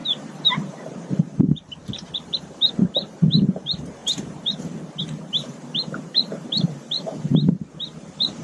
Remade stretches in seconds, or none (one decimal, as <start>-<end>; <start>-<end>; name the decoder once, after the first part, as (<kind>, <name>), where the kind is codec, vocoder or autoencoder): 0.0-7.3 (vocoder, BigVGAN v2); 8.0-8.4